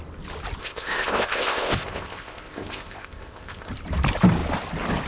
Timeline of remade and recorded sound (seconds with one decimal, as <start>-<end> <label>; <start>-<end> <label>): 0.0-0.6 recorded; 0.6-3.7 remade; 3.7-5.1 recorded